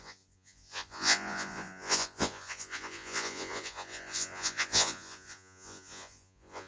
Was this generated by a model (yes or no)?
yes